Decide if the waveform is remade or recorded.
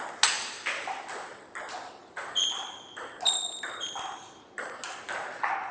recorded